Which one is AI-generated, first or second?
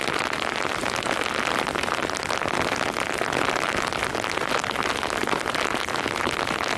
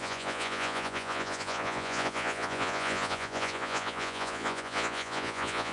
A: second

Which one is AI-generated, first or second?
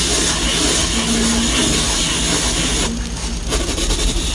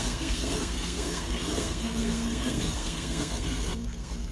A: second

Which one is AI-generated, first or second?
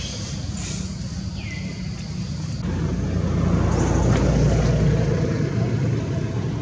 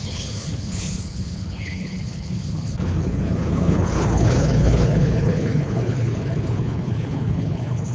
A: second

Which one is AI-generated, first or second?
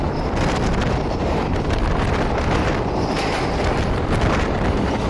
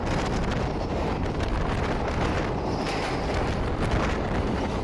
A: first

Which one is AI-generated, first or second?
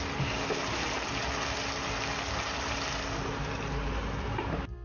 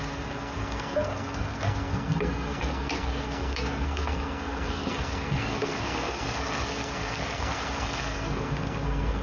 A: second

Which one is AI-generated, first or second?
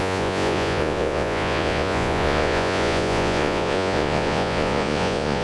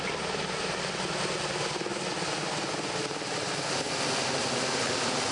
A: first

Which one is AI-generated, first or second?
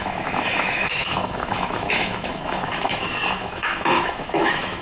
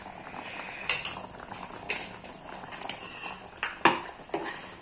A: first